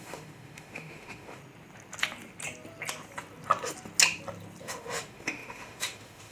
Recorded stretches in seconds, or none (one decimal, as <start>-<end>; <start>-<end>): 1.4-4.6